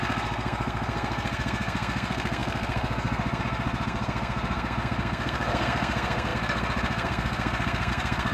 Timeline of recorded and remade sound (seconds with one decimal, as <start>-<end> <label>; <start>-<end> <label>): 0.0-8.3 remade